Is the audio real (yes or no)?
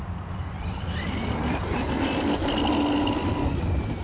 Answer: yes